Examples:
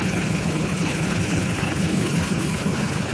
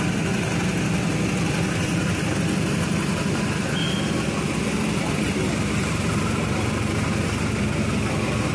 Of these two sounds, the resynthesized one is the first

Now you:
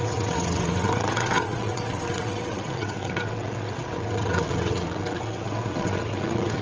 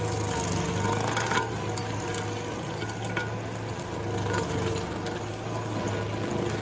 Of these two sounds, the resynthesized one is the first